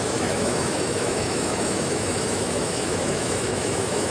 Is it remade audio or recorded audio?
remade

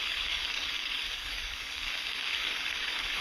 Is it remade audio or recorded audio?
remade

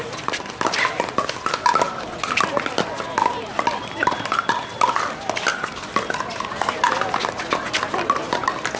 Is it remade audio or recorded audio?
recorded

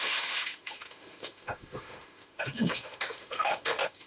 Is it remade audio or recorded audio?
remade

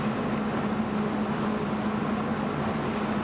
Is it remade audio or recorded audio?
recorded